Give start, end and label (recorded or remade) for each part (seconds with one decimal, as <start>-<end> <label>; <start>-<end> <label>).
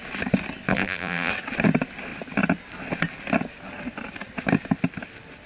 0.0-0.7 recorded; 0.7-1.3 remade; 1.3-5.5 recorded